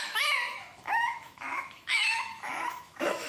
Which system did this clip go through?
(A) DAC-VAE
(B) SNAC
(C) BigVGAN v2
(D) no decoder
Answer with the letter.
A